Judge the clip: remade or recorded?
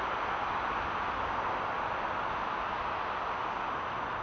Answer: recorded